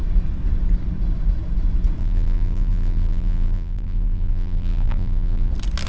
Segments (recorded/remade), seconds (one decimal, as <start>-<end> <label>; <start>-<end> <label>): 0.0-2.0 recorded; 2.0-5.5 remade; 5.5-5.9 recorded